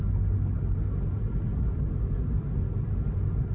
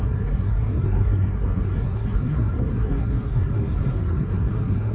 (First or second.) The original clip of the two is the first